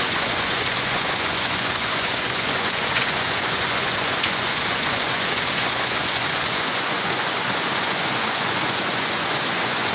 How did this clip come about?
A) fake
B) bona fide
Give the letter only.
A